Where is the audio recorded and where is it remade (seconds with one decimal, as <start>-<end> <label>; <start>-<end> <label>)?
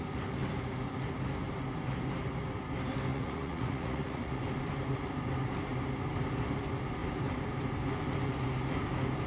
0.0-3.1 recorded; 3.1-4.4 remade; 4.4-9.3 recorded